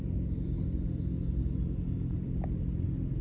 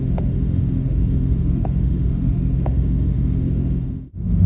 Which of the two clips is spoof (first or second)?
second